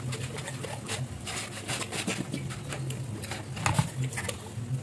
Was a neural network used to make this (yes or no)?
no